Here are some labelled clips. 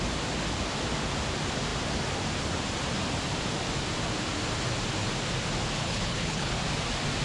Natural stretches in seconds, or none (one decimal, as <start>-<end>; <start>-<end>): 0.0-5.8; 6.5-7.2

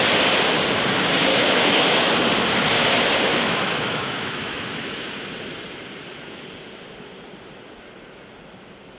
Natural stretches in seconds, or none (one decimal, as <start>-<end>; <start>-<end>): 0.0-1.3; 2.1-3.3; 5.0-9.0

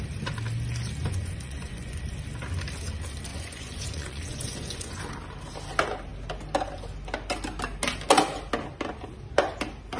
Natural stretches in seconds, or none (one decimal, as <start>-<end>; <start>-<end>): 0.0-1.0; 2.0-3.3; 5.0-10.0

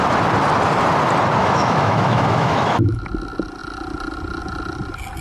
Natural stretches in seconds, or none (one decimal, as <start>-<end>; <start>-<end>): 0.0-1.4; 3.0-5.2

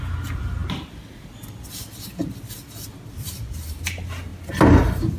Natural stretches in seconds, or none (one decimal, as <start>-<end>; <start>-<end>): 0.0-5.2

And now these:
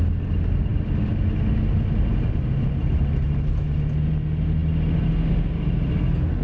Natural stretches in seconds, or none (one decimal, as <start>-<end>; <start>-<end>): 0.0-6.4

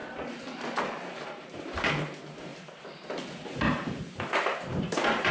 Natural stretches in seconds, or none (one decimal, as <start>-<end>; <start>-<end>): 0.0-0.8; 2.5-3.7

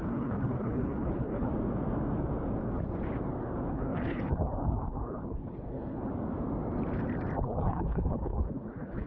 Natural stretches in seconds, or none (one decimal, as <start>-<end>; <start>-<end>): 1.5-3.7; 6.1-7.4